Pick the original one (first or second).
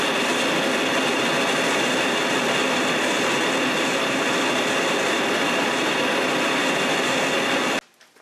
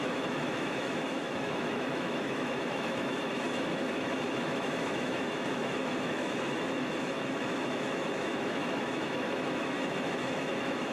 first